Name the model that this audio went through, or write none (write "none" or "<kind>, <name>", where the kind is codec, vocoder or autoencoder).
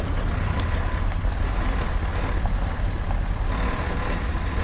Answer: none